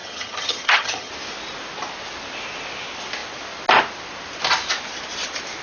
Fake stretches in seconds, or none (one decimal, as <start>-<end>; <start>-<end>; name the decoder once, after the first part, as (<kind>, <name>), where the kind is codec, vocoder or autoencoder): 0.0-1.1 (vocoder, HiFi-GAN)